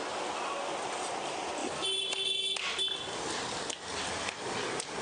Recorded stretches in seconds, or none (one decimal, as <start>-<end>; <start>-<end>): 0.0-5.0